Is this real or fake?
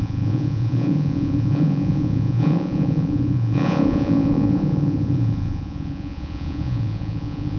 fake